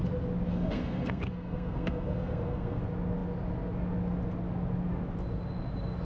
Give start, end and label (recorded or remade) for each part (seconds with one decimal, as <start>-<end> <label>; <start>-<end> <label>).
0.0-0.5 recorded; 0.5-2.8 remade; 2.8-6.0 recorded